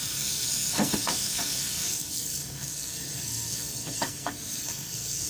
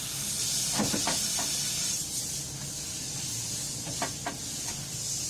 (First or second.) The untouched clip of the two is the second